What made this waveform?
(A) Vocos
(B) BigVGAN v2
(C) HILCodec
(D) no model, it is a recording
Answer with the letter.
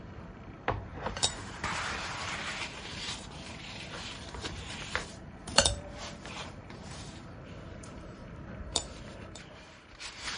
B